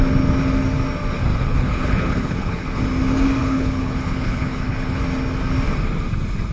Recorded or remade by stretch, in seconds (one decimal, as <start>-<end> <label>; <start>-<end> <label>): 0.0-1.3 recorded; 1.3-2.8 remade; 2.8-3.4 recorded; 3.4-5.0 remade; 5.0-6.5 recorded